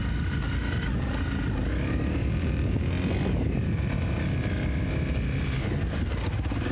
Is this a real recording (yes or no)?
yes